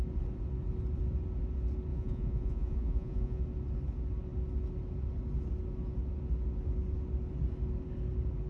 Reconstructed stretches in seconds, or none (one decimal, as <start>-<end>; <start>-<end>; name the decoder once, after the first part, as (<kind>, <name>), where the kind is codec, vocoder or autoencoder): 1.9-3.4 (vocoder, Vocos)